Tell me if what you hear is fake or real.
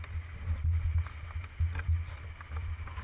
real